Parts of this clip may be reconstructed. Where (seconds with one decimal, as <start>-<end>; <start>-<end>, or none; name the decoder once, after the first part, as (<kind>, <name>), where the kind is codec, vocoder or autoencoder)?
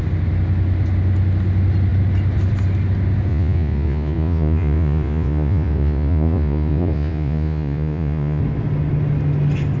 3.3-8.4 (vocoder, Vocos)